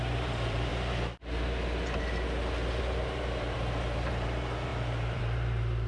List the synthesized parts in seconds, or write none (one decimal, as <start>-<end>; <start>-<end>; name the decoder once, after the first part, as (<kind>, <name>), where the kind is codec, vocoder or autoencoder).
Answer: 0.0-0.7 (vocoder, BigVGAN v2); 2.8-5.9